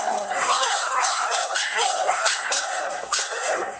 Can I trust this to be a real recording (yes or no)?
no